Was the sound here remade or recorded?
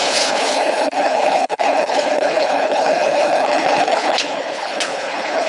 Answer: remade